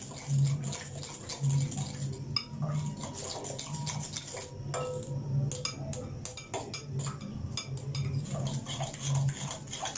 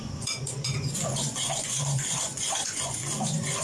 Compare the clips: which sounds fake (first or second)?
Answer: second